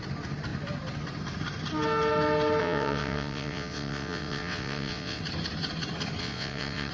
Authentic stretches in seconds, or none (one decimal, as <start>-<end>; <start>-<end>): 0.0-2.6; 5.2-6.2